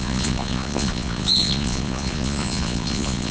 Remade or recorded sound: remade